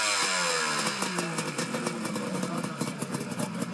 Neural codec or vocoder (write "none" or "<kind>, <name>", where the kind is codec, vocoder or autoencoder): none